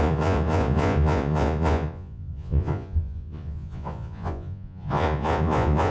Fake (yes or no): yes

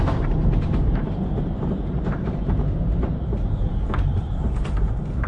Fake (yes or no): yes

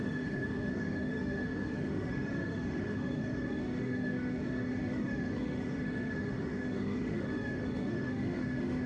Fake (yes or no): yes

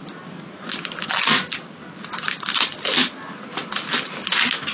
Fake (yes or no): no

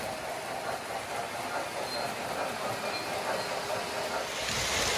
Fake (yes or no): no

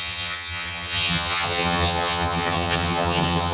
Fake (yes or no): yes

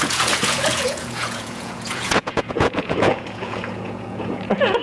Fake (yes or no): yes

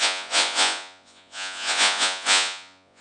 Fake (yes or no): yes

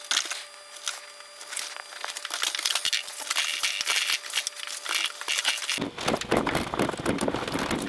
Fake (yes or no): no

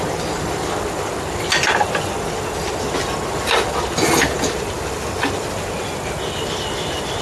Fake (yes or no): no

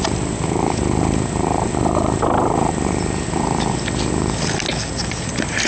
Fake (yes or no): no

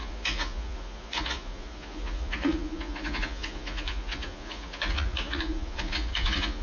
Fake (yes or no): yes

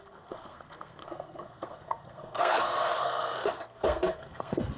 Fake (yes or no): yes